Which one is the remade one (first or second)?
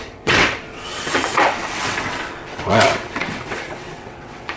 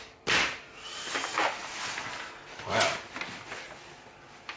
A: first